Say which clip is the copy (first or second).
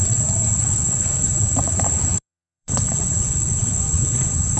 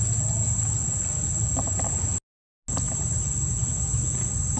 first